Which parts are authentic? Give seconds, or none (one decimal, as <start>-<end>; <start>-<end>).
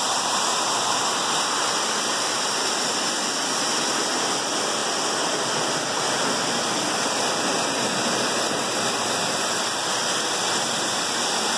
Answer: 0.0-11.6